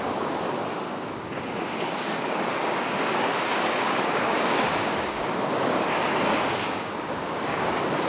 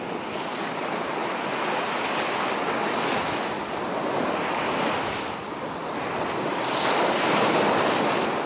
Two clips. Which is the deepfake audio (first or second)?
first